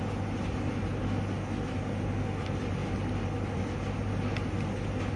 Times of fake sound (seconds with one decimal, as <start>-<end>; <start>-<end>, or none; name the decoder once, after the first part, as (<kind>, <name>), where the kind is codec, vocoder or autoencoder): none